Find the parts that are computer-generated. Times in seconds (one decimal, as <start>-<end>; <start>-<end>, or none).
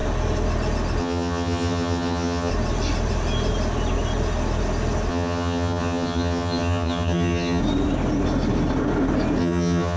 1.0-2.5; 5.1-7.6; 9.4-10.0